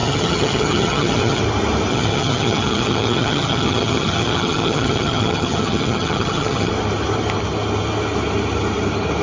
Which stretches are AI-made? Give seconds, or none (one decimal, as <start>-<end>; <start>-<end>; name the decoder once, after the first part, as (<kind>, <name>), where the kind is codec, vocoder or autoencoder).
0.0-1.4 (vocoder, HiFi-GAN); 1.9-6.7